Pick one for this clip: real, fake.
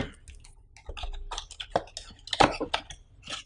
real